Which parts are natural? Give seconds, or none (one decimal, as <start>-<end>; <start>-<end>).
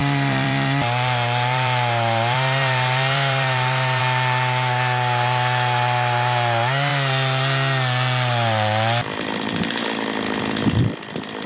4.0-11.5